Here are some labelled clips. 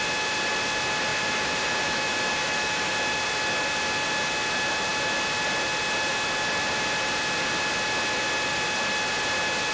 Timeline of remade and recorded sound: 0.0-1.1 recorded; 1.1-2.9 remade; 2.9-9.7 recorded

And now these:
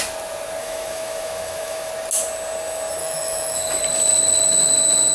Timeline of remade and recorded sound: 0.0-0.6 recorded; 0.6-1.9 remade; 1.9-3.0 recorded; 3.0-3.8 remade; 3.8-5.1 recorded

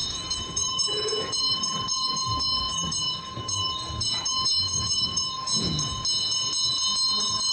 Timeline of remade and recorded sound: 0.0-5.5 remade; 5.5-7.5 recorded

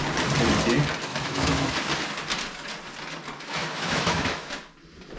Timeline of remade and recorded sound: 0.0-1.1 recorded; 1.1-1.7 remade; 1.7-3.6 recorded; 3.6-4.5 remade; 4.5-5.2 recorded

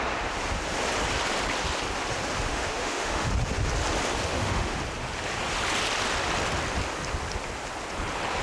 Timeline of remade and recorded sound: 0.0-2.5 recorded; 2.5-3.3 remade; 3.3-4.3 recorded; 4.3-4.8 remade; 4.8-8.4 recorded

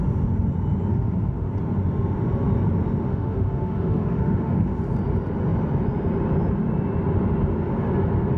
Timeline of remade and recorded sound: 0.0-0.9 recorded; 0.9-1.5 remade; 1.5-3.1 recorded; 3.1-4.8 remade; 4.8-8.4 recorded

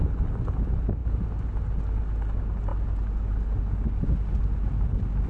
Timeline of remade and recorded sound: 0.0-5.3 recorded